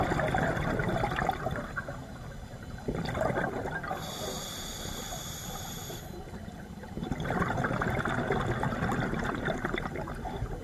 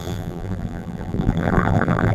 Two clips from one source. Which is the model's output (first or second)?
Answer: second